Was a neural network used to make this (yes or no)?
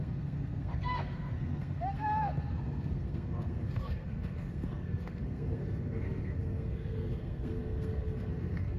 yes